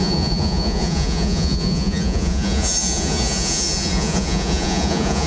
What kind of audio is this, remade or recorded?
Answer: remade